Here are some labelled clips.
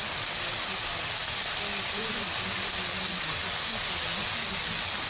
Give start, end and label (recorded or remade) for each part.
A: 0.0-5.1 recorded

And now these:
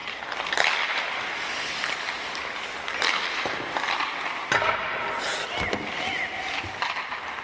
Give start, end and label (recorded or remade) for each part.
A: 0.0-7.4 recorded

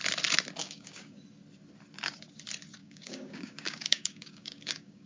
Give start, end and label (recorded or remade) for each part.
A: 0.0-0.6 recorded; 0.6-1.2 remade; 1.2-2.8 recorded; 2.8-5.1 remade

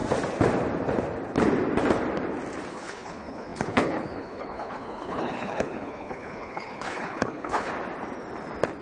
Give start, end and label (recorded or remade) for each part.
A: 0.0-2.7 recorded; 2.7-7.7 remade; 7.7-8.8 recorded

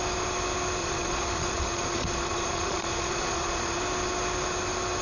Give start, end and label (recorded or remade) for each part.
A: 0.0-0.8 recorded; 0.8-3.8 remade; 3.8-5.0 recorded